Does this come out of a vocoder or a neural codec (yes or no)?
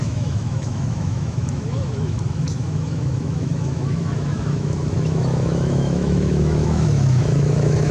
yes